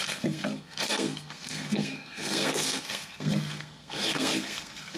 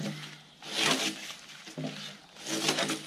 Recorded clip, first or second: second